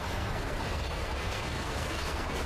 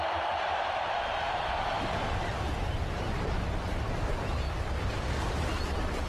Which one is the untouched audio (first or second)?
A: second